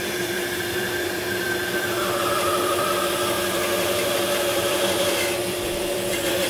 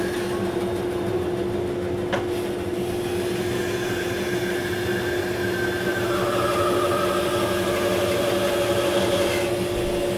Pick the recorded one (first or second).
second